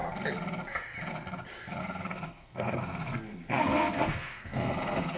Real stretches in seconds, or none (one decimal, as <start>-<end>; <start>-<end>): 0.0-1.8